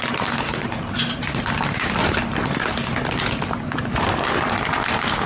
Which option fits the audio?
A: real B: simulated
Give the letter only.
A